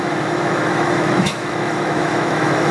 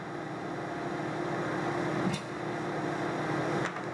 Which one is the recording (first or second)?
second